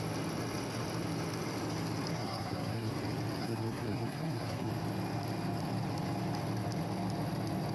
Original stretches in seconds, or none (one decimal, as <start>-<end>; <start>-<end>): 0.0-2.1; 2.9-3.4; 4.7-7.7